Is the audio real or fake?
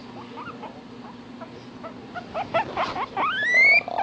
real